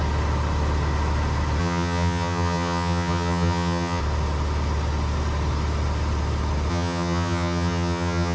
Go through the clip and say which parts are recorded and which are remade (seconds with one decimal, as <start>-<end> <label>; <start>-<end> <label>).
0.0-1.6 recorded; 1.6-4.0 remade; 4.0-6.7 recorded; 6.7-8.3 remade